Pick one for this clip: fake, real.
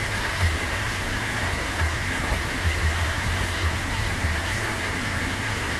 fake